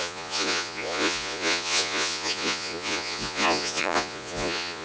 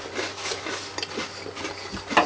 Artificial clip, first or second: first